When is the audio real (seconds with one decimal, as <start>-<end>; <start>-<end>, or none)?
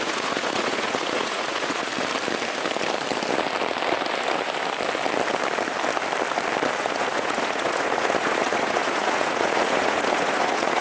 1.9-6.8